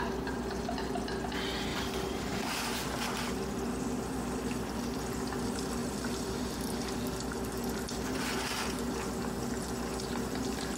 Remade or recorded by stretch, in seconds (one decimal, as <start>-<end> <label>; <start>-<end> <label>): 0.0-1.7 recorded; 1.7-2.5 remade; 2.5-5.8 recorded; 5.8-6.9 remade; 6.9-10.8 recorded